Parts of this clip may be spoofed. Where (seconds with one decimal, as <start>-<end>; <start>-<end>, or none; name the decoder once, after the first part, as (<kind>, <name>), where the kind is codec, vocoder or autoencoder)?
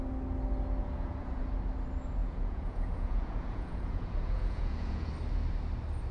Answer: 0.8-1.4 (vocoder, Vocos); 2.2-5.1